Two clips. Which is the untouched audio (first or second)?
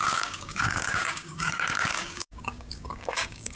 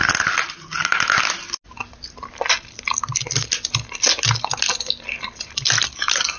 second